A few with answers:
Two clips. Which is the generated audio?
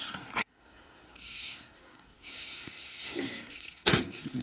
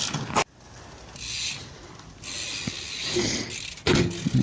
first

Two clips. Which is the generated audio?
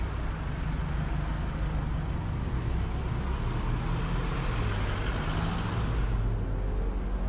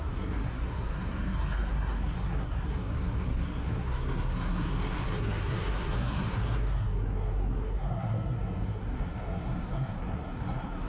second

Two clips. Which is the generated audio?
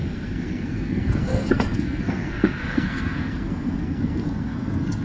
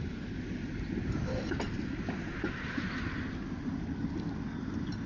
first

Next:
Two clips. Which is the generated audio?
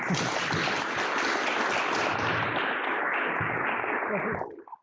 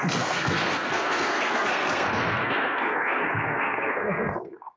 second